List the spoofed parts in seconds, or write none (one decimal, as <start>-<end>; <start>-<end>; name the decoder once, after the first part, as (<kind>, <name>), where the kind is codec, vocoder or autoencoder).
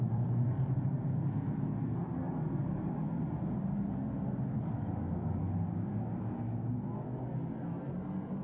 none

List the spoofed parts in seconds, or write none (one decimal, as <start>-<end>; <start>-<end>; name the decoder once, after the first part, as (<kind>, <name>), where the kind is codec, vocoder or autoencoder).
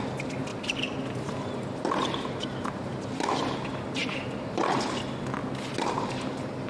0.5-3.1 (vocoder, BigVGAN v2); 4.0-4.6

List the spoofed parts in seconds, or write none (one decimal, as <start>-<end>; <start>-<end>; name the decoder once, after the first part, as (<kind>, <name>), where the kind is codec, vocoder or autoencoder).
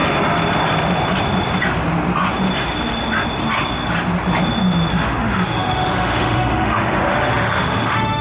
4.9-8.2 (autoencoder, DAC-VAE)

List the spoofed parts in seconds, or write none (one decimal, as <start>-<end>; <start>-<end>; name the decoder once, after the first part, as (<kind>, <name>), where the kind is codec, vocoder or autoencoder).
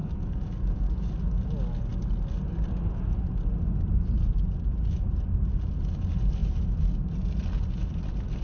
0.0-1.1 (codec, DAC)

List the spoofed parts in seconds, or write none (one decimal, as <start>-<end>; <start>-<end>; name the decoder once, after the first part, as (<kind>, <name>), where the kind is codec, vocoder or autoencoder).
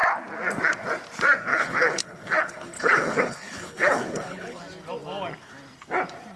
1.5-4.6 (codec, HILCodec)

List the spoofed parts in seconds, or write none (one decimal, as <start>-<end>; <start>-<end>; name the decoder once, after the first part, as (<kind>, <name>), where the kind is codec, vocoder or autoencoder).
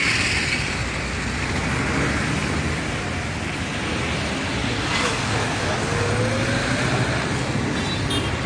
4.6-6.1 (codec, DAC)